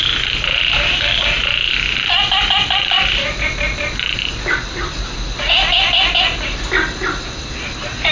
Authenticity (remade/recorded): recorded